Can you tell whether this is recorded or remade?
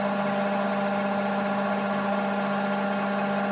recorded